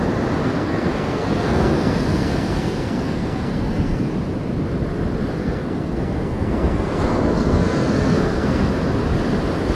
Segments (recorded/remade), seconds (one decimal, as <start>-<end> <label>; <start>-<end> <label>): 0.0-0.4 recorded; 0.4-4.1 remade; 4.1-5.4 recorded; 5.4-8.7 remade; 8.7-9.8 recorded